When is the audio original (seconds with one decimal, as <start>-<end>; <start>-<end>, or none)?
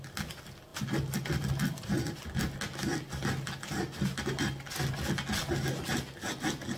0.0-6.8